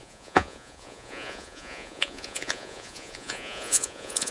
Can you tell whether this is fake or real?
fake